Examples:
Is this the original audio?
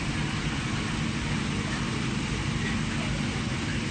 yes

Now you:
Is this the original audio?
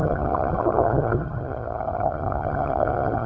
no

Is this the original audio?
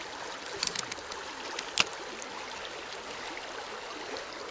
yes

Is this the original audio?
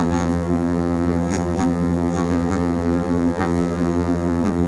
no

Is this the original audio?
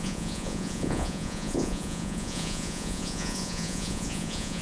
no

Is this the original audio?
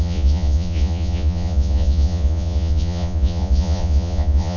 no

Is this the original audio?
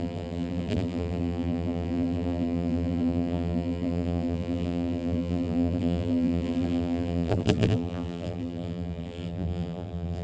no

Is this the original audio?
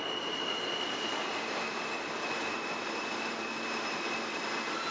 yes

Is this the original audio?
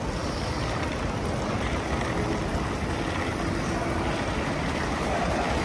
yes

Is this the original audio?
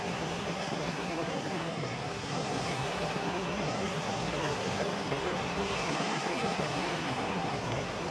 no